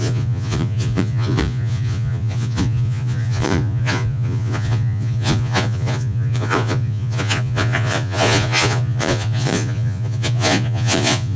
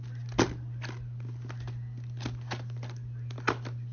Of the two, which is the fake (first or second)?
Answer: first